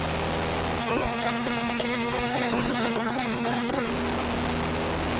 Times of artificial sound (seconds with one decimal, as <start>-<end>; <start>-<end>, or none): 0.8-3.9